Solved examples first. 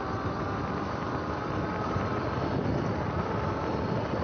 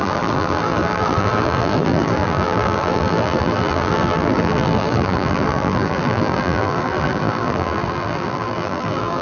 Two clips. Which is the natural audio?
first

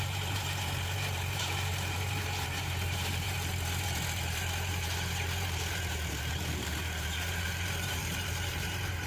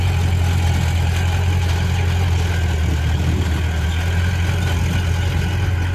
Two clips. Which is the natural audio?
second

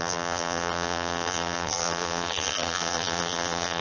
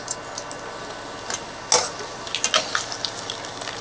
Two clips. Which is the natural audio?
second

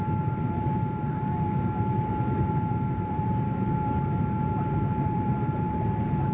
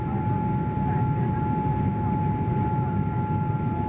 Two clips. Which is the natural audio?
second